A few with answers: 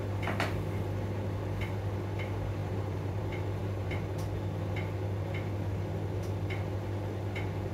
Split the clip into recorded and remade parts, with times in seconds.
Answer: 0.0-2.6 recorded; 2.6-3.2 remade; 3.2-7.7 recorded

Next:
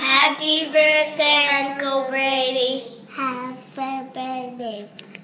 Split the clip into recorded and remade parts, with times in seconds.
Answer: 0.0-1.5 remade; 1.5-4.6 recorded; 4.6-5.2 remade

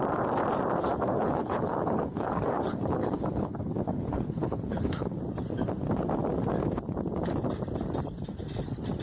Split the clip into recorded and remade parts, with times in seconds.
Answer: 0.0-1.1 recorded; 1.1-5.2 remade; 5.2-9.0 recorded

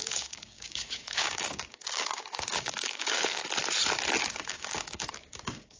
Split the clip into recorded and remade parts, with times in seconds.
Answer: 0.0-3.4 remade; 3.4-4.2 recorded; 4.2-5.8 remade